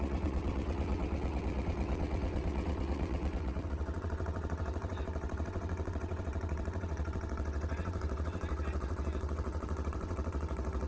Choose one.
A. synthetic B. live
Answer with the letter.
A